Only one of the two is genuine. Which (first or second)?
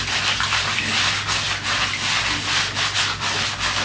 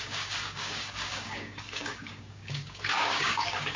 first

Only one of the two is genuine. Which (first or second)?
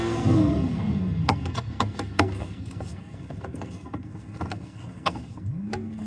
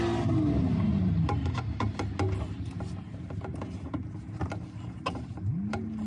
second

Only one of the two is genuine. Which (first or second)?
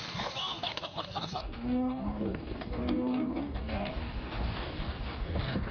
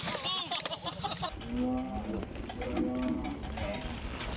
second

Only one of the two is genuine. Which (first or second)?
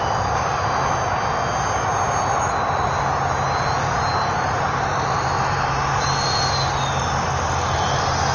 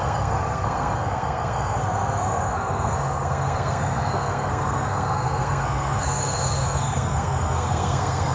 first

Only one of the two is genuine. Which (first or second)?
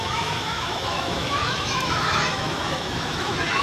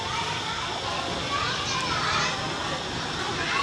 second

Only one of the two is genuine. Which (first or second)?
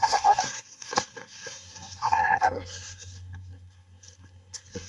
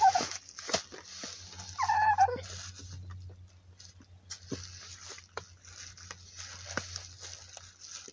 second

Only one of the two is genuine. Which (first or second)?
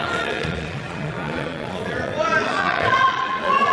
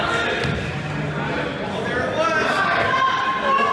second